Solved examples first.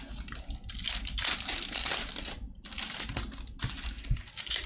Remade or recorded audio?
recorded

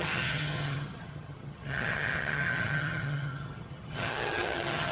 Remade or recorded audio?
remade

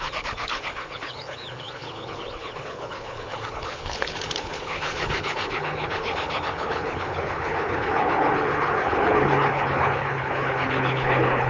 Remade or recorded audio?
remade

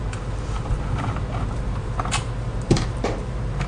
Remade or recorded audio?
remade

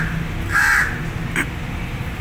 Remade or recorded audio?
recorded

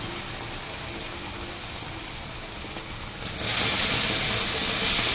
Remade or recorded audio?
recorded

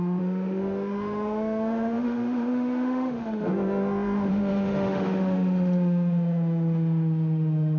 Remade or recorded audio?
remade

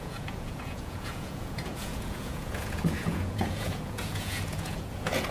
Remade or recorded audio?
remade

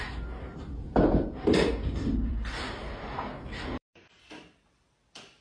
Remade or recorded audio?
remade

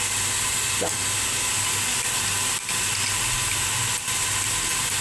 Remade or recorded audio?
recorded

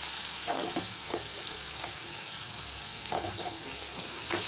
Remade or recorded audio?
remade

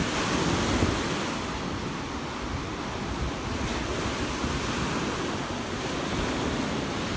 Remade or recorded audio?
recorded